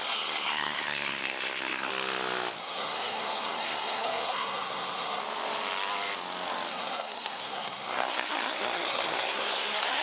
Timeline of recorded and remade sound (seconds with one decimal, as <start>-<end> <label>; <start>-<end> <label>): 0.0-1.9 remade; 1.9-2.6 recorded; 2.6-5.2 remade; 5.2-6.7 recorded; 6.7-10.0 remade